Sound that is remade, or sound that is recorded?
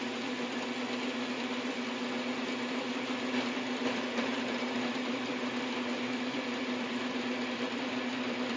remade